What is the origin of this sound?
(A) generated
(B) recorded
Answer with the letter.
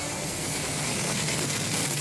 A